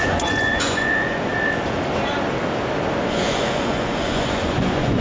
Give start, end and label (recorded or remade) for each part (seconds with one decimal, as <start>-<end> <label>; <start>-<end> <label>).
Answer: 0.0-1.3 remade; 1.3-3.1 recorded; 3.1-5.0 remade